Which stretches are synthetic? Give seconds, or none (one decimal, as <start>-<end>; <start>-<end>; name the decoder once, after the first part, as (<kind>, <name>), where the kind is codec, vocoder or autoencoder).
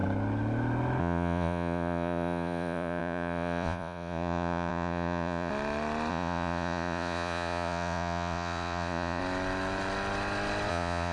1.0-5.5 (vocoder, Vocos); 6.1-9.2; 10.7-11.1